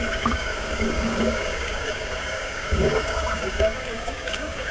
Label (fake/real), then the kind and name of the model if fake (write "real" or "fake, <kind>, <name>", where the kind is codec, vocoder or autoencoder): fake, codec, DAC